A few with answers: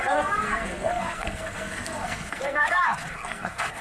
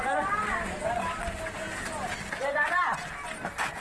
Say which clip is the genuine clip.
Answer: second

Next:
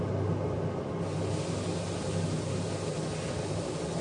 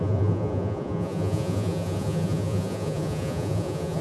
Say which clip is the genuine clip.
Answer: first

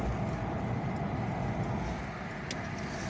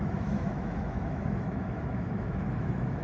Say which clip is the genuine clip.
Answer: first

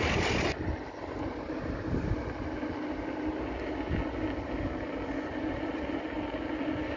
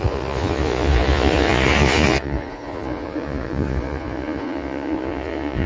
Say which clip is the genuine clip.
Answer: first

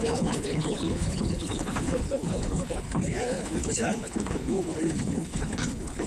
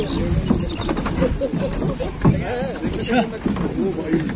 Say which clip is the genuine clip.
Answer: second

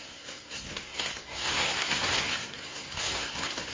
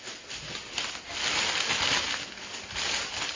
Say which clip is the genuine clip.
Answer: second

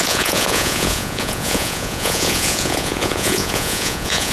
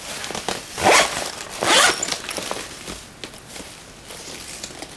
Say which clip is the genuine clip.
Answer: second